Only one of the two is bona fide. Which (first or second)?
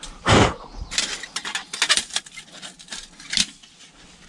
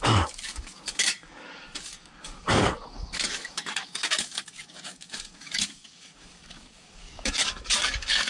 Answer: first